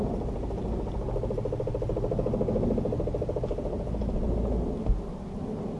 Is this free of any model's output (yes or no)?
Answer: yes